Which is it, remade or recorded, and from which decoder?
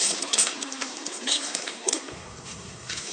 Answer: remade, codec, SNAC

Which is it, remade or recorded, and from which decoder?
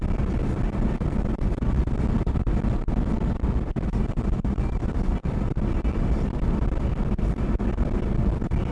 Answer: recorded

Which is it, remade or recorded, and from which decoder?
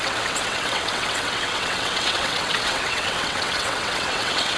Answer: remade, vocoder, WaveNeXt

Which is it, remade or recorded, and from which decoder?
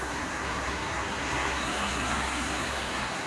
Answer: remade, codec, SNAC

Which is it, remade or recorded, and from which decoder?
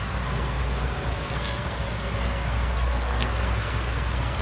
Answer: remade, codec, SNAC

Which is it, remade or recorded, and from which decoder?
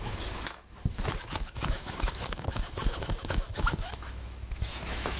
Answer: remade, autoencoder, DAC-VAE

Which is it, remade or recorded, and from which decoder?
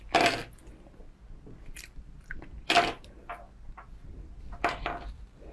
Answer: recorded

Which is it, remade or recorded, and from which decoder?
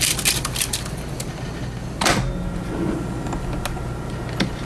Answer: recorded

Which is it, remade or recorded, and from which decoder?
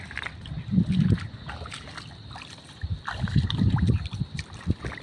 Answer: remade, vocoder, BigVGAN v2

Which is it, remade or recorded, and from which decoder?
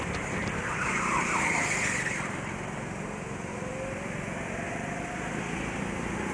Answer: recorded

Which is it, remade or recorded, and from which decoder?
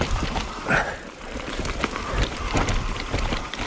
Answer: recorded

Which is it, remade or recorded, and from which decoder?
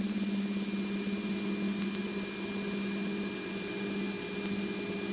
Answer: recorded